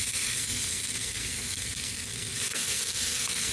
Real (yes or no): no